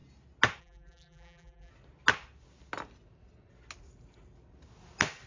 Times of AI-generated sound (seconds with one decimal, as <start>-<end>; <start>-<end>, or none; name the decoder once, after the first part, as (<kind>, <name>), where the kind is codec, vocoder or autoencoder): 0.6-1.7 (vocoder, BigVGAN v2)